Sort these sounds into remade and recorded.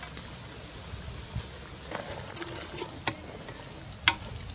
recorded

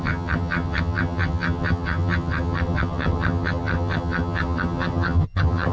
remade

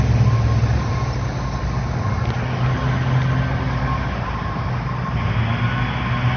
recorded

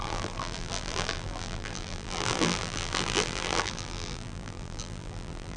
remade